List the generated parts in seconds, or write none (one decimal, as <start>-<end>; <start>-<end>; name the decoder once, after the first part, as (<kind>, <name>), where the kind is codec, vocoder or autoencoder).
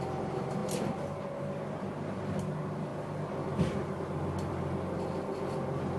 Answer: none